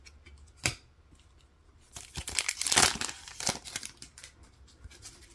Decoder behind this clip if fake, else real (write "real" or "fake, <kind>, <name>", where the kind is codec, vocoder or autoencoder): fake, vocoder, BigVGAN v2